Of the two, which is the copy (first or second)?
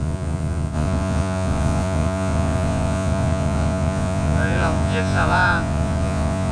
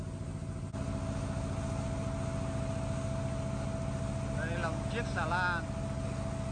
first